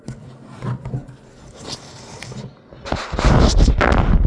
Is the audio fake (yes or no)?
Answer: no